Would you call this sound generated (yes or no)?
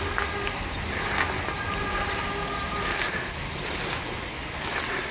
no